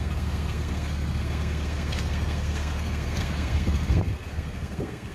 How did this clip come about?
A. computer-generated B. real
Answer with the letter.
A